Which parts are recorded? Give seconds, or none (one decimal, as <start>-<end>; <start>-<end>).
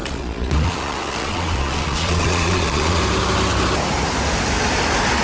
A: 3.0-5.2